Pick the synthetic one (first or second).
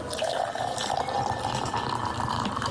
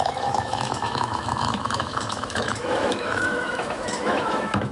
second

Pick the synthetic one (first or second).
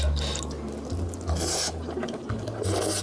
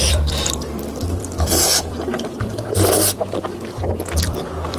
second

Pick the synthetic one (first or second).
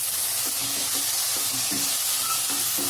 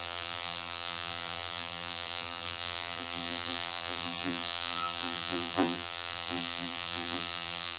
second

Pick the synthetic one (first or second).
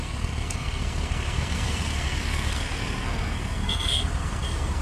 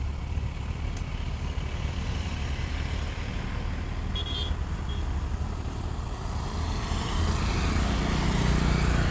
first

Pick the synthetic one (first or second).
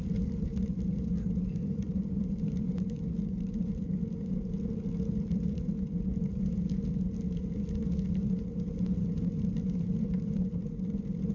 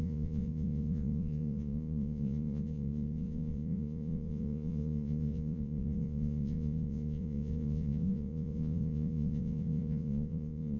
second